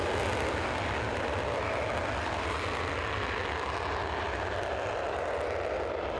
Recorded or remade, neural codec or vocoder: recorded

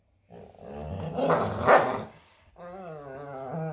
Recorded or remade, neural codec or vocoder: recorded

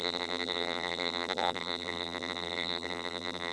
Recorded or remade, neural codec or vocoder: remade, vocoder, BigVGAN v2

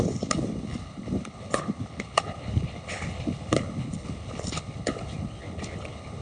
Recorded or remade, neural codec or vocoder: remade, codec, HILCodec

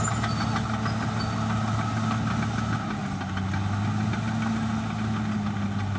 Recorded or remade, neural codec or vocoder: recorded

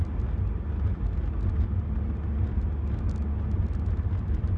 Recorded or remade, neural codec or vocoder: recorded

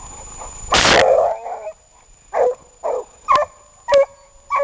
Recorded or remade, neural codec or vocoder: recorded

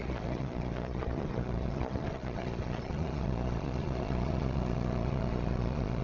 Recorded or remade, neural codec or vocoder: remade, vocoder, Vocos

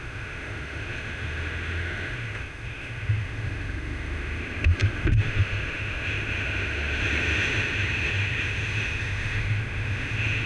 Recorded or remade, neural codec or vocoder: remade, autoencoder, DAC-VAE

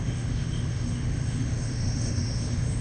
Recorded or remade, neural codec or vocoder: remade, autoencoder, DAC-VAE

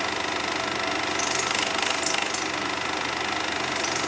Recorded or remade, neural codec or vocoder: recorded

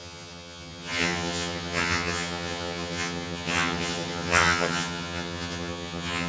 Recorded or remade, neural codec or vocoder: remade, vocoder, HiFi-GAN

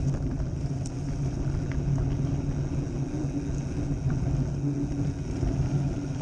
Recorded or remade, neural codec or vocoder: recorded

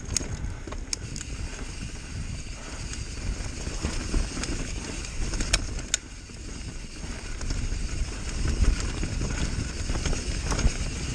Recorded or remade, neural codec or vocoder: recorded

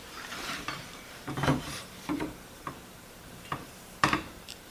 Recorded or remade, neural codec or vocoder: remade, vocoder, BigVGAN v2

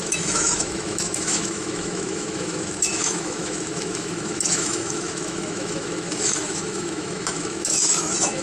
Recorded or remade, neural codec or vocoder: remade, autoencoder, DAC-VAE